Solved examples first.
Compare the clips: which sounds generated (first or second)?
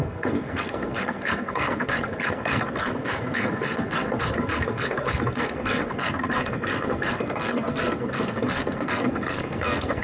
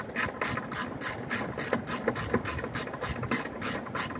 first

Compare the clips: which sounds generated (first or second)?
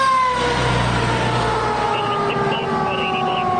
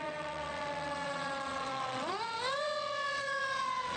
second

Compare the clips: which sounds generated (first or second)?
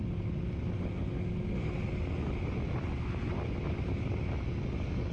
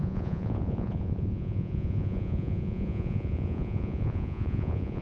second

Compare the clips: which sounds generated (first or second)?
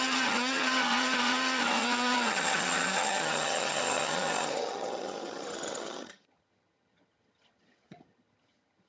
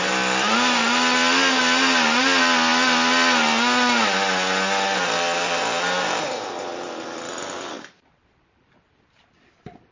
first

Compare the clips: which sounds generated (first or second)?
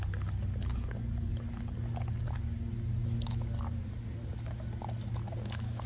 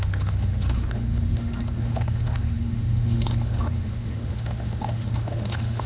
second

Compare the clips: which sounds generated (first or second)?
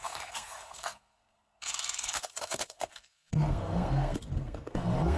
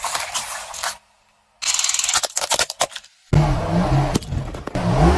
first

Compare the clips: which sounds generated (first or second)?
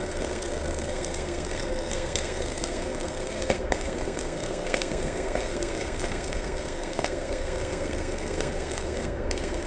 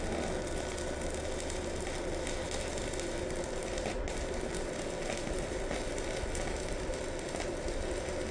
first